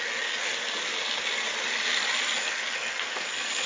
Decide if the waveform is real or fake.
real